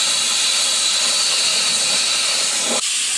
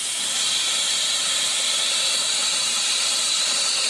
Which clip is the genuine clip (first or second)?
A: first